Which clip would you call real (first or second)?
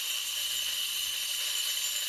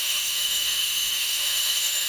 first